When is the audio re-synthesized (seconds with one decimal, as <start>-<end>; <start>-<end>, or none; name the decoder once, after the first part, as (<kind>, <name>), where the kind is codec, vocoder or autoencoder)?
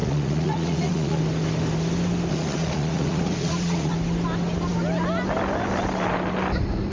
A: 0.0-1.2 (vocoder, Vocos); 2.3-3.9